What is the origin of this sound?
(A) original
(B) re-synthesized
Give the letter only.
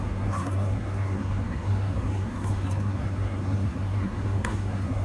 B